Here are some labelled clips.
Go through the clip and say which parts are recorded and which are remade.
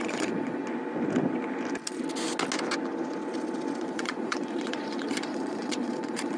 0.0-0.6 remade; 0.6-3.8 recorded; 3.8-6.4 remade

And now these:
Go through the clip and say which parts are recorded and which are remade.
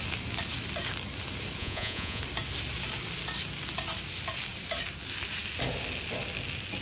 0.0-1.6 recorded; 1.6-2.2 remade; 2.2-6.8 recorded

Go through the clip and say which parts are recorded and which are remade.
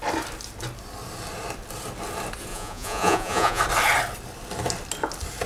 0.0-2.5 recorded; 2.5-3.6 remade; 3.6-5.5 recorded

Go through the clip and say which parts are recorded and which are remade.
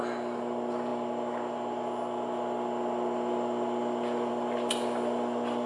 0.0-5.7 recorded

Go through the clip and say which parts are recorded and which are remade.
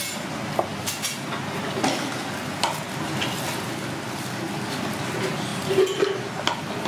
0.0-6.9 recorded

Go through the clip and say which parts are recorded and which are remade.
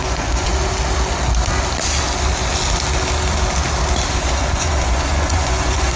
0.0-0.5 remade; 0.5-4.1 recorded; 4.1-6.0 remade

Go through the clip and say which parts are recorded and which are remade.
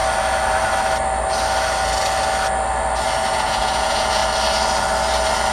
0.0-3.3 recorded; 3.3-4.2 remade; 4.2-5.5 recorded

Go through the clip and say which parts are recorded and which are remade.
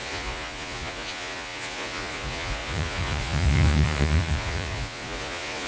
0.0-5.7 remade